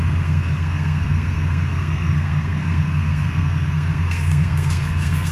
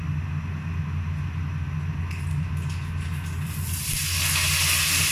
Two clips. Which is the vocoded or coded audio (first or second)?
first